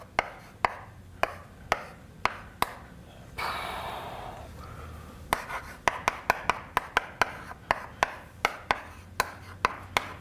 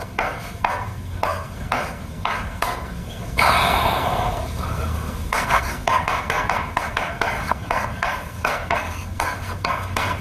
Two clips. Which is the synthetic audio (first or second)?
second